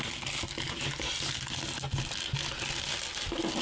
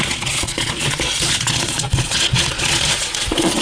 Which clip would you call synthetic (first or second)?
second